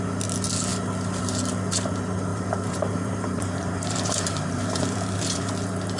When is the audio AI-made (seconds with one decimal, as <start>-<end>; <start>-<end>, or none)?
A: 2.3-5.5